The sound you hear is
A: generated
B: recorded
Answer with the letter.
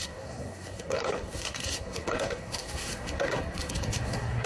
A